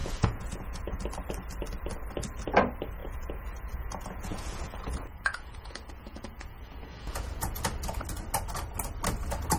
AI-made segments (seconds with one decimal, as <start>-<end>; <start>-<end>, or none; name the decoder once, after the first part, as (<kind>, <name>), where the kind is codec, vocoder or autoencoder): 0.0-1.0 (vocoder, Vocos); 3.0-7.6